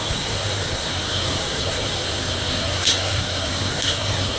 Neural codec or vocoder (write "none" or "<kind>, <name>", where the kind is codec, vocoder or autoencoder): codec, SNAC